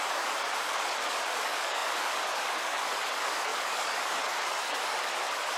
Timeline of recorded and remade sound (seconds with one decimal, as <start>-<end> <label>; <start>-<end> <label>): 0.0-5.6 remade